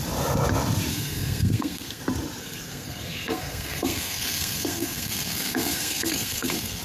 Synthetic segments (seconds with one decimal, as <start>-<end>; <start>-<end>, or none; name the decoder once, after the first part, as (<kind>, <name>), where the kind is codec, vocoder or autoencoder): 0.9-2.0 (codec, SNAC); 2.4-6.8